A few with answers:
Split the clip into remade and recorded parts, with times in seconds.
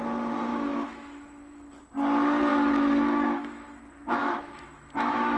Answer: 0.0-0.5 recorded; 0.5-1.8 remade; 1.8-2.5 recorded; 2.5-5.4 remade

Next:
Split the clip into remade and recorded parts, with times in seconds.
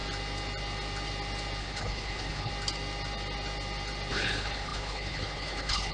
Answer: 0.0-1.6 recorded; 1.6-2.5 remade; 2.5-4.1 recorded; 4.1-5.9 remade